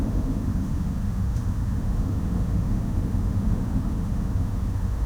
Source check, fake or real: fake